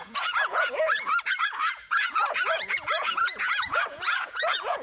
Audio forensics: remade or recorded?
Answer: remade